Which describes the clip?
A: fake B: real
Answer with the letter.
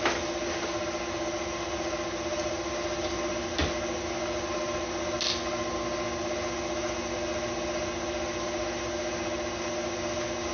B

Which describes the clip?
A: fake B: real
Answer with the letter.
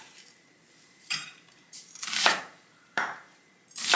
A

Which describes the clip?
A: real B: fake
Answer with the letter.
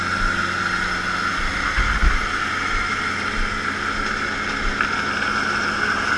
A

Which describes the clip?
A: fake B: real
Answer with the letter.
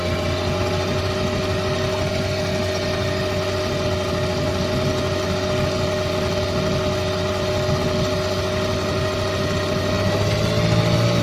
B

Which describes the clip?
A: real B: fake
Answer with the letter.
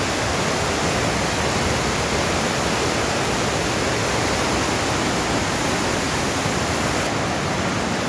A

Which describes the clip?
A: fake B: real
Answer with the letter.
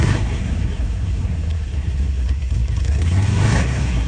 A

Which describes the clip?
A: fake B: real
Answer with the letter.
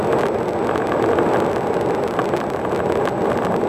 B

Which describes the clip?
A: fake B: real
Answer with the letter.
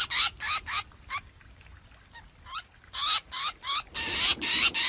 B